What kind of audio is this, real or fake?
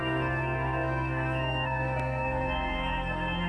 fake